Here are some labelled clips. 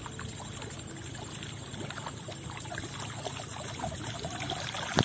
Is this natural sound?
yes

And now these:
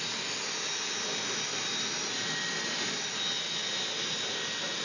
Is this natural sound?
yes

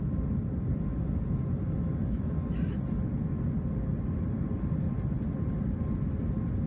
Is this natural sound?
yes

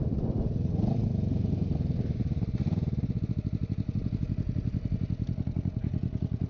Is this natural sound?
yes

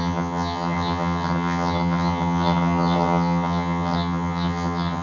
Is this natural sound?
no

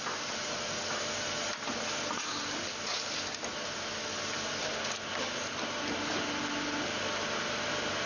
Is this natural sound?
yes